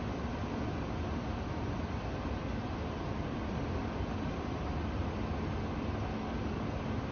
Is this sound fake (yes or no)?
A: no